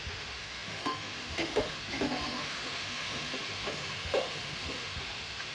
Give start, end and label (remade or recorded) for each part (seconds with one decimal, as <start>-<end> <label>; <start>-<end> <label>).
0.0-5.5 remade